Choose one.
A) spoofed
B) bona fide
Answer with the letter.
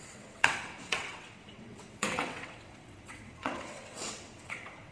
A